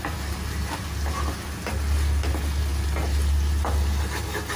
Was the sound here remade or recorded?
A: recorded